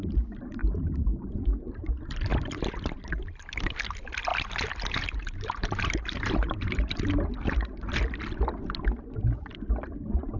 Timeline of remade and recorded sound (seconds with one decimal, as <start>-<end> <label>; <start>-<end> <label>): 0.0-0.6 recorded; 0.6-1.3 remade; 1.3-2.3 recorded; 2.3-3.0 remade; 3.0-4.3 recorded; 4.3-7.0 remade; 7.0-10.4 recorded